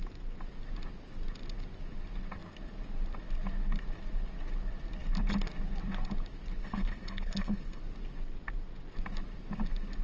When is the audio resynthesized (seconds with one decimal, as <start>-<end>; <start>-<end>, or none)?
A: 6.6-7.8